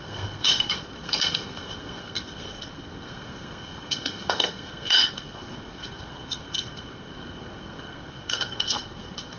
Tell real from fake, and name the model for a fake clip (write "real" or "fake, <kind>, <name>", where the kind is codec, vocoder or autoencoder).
fake, codec, SNAC